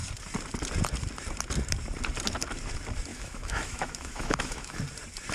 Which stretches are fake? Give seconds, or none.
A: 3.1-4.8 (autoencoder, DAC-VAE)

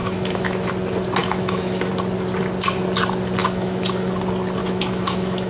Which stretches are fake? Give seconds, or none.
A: 0.0-0.7 (autoencoder, DAC-VAE); 1.2-1.9; 3.4-4.1; 4.6-5.5

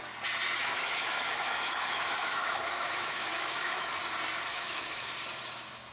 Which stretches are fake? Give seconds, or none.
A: 0.6-4.0 (autoencoder, DAC-VAE); 4.5-5.1

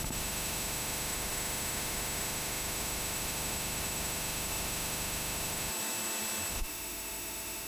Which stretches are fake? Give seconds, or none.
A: 0.0-5.7 (autoencoder, DAC-VAE); 6.5-7.7

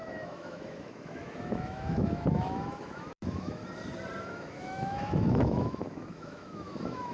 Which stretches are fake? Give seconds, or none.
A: 0.0-3.6 (autoencoder, DAC-VAE); 4.2-7.1

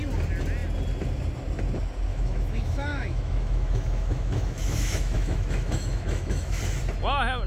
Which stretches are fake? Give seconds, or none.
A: 2.1-6.6 (autoencoder, DAC-VAE)

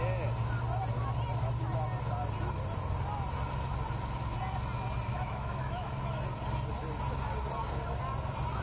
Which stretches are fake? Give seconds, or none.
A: 5.1-6.2 (autoencoder, DAC-VAE)

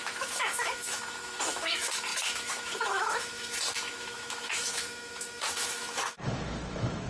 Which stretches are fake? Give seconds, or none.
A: 0.0-7.1 (autoencoder, DAC-VAE)